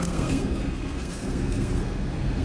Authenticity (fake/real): fake